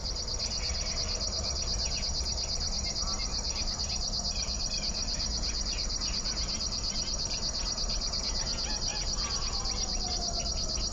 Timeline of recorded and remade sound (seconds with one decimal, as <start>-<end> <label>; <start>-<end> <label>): 0.0-3.3 recorded; 3.3-3.8 remade; 3.8-5.0 recorded; 5.0-8.2 remade; 8.2-8.9 recorded; 8.9-10.1 remade; 10.1-10.9 recorded